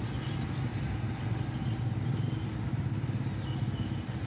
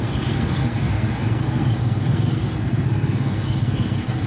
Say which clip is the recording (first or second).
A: first